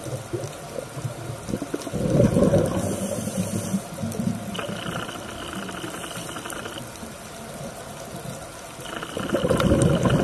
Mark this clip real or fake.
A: real